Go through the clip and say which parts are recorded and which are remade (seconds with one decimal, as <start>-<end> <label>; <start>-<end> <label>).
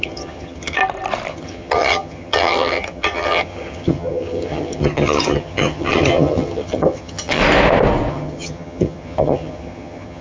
0.0-0.8 remade; 0.8-1.3 recorded; 1.3-7.4 remade; 7.4-8.1 recorded; 8.1-10.2 remade